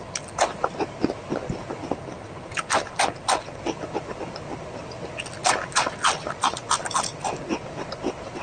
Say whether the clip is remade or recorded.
recorded